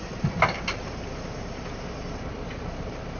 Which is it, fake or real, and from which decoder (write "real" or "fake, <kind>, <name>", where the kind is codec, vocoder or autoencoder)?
fake, vocoder, BigVGAN v2